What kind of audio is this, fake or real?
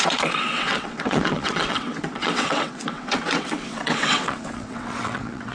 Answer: fake